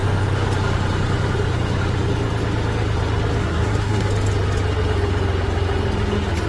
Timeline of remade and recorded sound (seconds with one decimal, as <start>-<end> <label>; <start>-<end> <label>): 0.0-3.4 recorded; 3.4-4.1 remade; 4.1-6.5 recorded